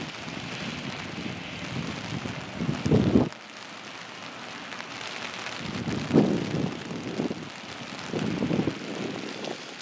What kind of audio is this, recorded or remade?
recorded